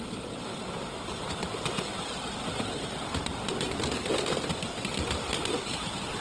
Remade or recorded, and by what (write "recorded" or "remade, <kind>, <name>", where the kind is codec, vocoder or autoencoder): recorded